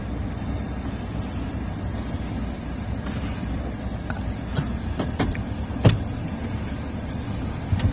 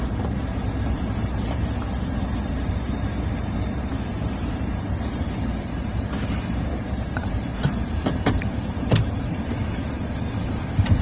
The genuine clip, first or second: first